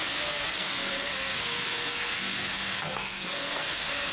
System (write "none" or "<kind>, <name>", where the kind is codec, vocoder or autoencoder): codec, SNAC